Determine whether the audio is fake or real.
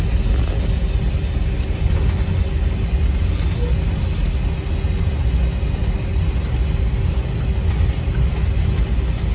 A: real